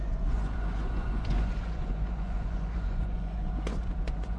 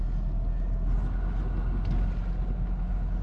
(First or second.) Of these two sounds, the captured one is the second